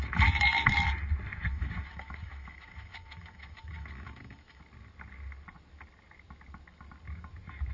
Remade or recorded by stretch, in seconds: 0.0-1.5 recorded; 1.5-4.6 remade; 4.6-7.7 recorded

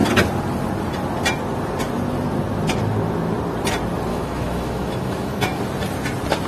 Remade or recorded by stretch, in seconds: 0.0-4.1 recorded; 4.1-5.6 remade; 5.6-6.5 recorded